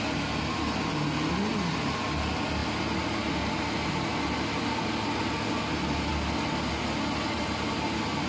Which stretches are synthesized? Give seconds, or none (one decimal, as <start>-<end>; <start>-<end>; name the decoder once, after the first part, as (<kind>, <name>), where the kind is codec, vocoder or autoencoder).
none